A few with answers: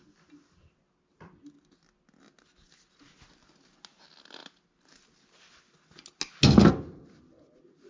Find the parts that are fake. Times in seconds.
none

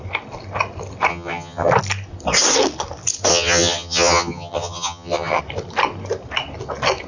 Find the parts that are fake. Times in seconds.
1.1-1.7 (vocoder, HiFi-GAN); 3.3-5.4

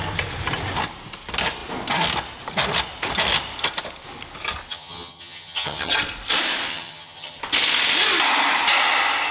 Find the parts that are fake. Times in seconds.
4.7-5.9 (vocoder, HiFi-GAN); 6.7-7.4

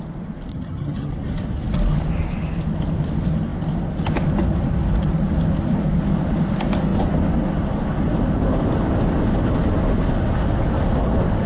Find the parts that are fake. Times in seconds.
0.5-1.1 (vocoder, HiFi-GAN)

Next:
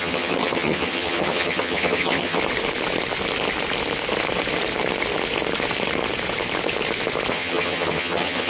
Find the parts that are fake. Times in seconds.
0.0-2.4 (vocoder, HiFi-GAN); 7.3-8.5

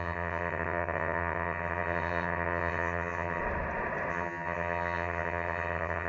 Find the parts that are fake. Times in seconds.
0.0-3.4 (vocoder, HiFi-GAN); 4.1-6.1

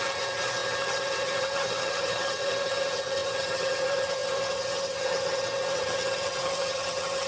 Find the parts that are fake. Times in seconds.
0.0-7.3 (vocoder, HiFi-GAN)

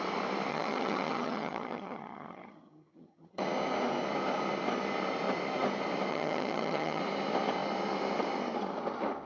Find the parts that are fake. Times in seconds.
0.5-3.4 (vocoder, HiFi-GAN); 6.1-7.0